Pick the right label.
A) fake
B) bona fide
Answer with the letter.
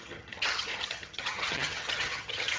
A